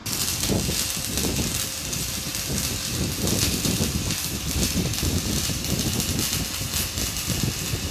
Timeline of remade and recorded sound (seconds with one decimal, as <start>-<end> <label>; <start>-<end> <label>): 0.0-0.5 remade; 0.5-2.3 recorded; 2.3-5.8 remade; 5.8-7.9 recorded